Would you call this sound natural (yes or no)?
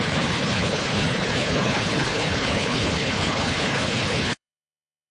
no